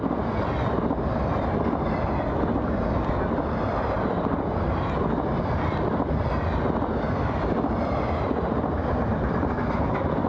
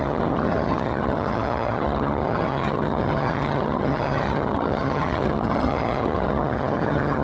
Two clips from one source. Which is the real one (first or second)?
first